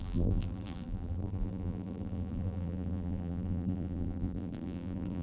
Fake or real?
fake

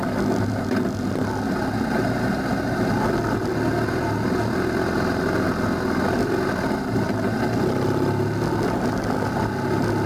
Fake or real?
real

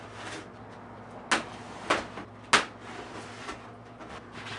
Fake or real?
real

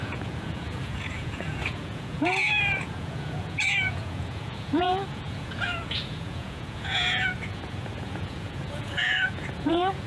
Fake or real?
fake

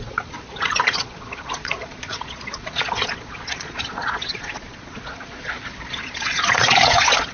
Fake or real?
fake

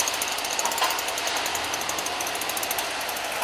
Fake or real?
real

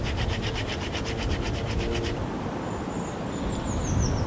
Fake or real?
real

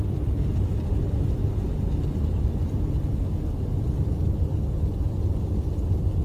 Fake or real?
real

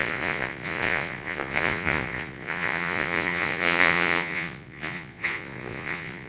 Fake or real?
fake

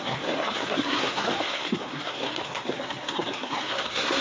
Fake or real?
fake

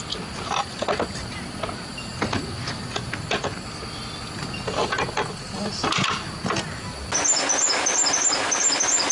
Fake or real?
real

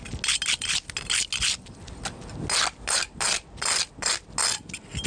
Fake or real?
real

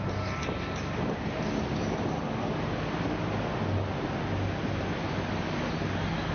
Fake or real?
real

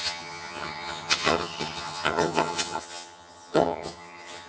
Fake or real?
fake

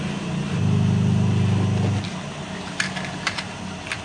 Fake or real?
real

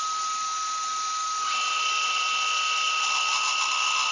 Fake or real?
real